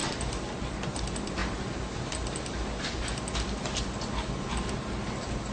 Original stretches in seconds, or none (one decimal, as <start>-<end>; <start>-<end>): 0.0-5.5